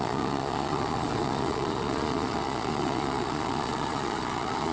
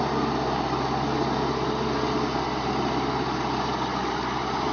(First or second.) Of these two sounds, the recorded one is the second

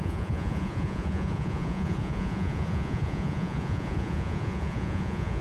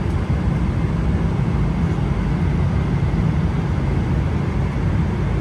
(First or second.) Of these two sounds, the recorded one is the second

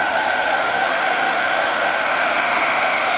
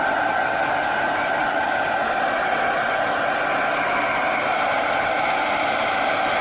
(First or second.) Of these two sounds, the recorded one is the second